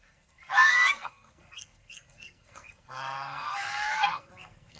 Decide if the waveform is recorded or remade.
remade